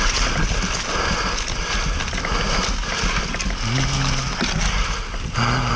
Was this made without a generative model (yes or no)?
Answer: yes